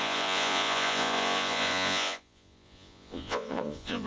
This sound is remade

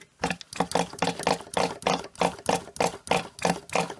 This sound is recorded